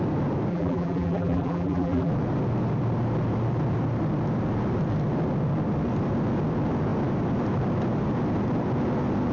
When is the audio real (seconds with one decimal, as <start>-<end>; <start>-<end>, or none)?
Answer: 0.0-0.5; 2.1-9.3